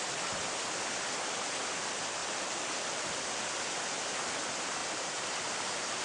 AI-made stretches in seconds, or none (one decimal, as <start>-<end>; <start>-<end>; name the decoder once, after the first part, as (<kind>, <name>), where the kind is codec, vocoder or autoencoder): 4.8-6.0 (vocoder, BigVGAN v2)